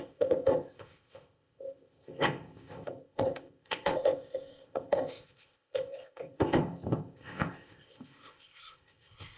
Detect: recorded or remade remade